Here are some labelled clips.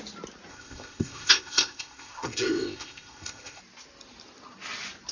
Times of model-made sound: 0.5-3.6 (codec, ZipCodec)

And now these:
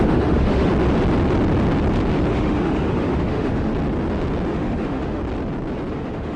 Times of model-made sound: 0.0-0.7 (autoencoder, DAC-VAE); 2.3-3.7; 4.5-5.2; 5.9-6.4

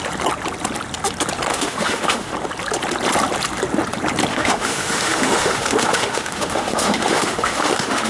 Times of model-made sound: 1.5-2.3 (autoencoder, DAC-VAE); 4.3-8.1

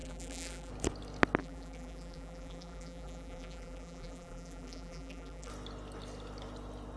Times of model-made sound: 0.0-0.7 (vocoder, BigVGAN v2); 1.4-5.5

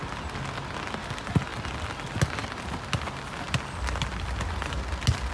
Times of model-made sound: none

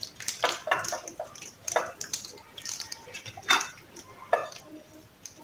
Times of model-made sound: 0.6-3.2 (vocoder, BigVGAN v2)